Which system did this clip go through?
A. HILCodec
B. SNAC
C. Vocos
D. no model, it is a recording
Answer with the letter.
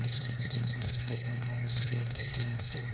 B